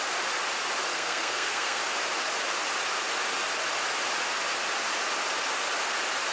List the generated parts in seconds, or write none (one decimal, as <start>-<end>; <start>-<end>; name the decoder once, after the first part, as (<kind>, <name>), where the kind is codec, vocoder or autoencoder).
0.9-1.8 (codec, SNAC)